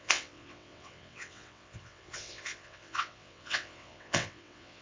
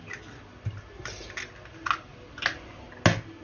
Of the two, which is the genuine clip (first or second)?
second